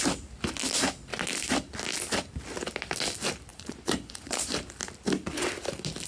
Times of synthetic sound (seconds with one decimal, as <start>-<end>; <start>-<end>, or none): 3.5-4.4